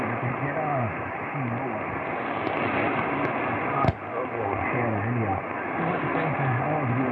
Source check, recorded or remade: recorded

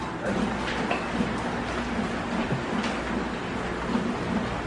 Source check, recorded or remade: recorded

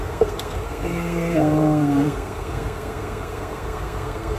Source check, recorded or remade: remade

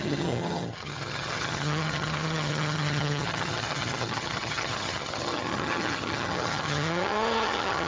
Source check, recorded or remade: remade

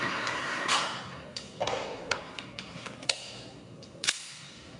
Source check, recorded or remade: remade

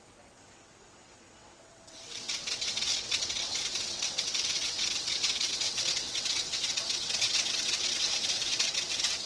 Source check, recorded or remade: remade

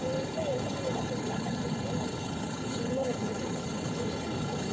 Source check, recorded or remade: remade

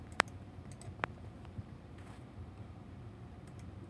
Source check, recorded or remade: remade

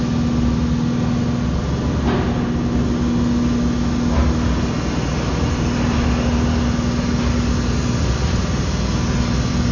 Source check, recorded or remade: recorded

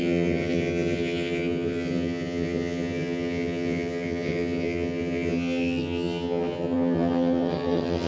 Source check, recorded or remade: remade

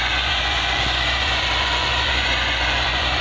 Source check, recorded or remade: remade